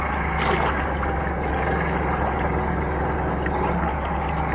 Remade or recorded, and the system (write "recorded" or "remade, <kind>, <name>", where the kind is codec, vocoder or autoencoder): recorded